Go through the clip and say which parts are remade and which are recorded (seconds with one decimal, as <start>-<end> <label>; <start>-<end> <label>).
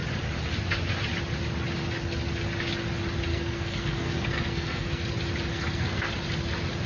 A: 0.0-3.3 recorded; 3.3-5.0 remade; 5.0-5.5 recorded; 5.5-6.1 remade; 6.1-6.9 recorded